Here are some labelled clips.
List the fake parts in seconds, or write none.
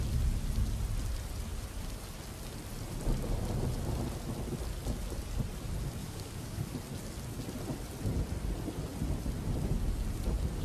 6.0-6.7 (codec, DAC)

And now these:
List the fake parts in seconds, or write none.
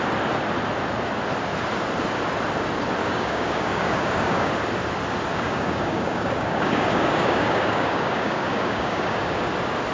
3.0-4.5 (codec, DAC); 5.3-9.5